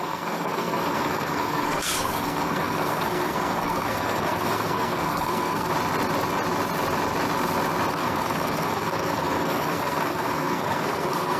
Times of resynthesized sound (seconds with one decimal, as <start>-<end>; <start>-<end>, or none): 0.0-5.7; 7.9-11.4